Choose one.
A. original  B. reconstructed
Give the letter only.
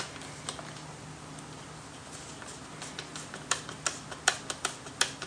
A